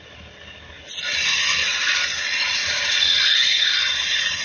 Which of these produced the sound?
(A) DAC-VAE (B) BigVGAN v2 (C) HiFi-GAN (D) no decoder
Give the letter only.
D